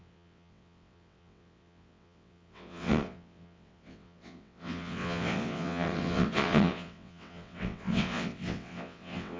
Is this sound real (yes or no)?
no